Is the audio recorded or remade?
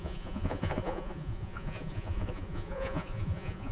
remade